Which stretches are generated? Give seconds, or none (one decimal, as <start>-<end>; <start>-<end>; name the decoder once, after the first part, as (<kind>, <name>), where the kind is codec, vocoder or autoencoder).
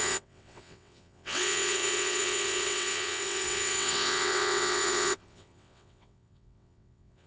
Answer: 0.0-7.3 (vocoder, WaveNeXt)